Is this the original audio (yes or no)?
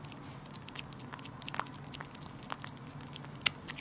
yes